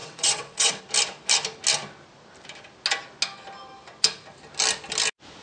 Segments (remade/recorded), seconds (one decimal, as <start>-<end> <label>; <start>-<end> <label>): 0.0-0.8 remade; 0.8-5.4 recorded